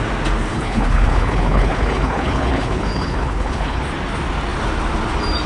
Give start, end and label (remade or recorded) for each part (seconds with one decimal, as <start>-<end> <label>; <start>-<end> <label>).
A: 0.0-0.5 recorded; 0.5-3.8 remade; 3.8-5.5 recorded